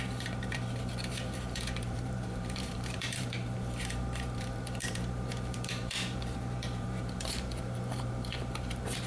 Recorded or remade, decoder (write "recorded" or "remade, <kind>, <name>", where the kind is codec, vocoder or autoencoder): remade, vocoder, BigVGAN v2